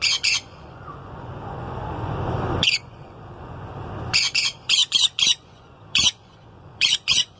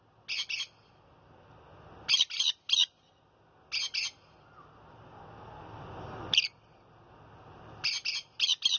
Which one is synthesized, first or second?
first